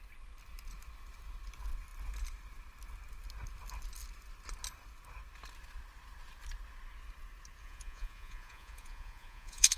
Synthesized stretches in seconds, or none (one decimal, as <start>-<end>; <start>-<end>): 7.6-9.8